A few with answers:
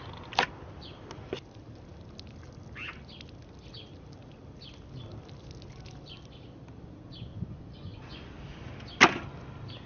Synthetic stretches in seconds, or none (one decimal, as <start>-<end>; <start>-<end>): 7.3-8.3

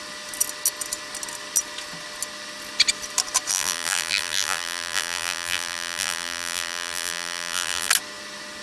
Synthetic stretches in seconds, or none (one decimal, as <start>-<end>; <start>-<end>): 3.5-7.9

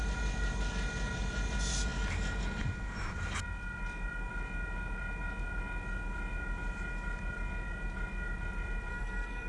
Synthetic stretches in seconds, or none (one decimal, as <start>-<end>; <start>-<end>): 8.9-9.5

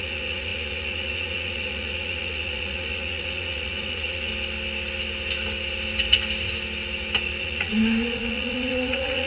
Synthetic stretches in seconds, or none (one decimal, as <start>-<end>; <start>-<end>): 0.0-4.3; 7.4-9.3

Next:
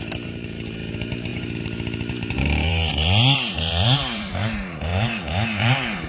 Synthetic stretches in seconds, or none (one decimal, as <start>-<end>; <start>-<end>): 0.0-2.9; 3.5-6.1